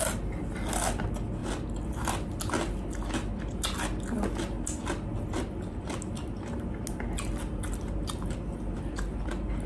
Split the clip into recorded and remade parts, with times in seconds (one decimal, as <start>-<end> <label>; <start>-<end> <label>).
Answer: 0.0-9.7 recorded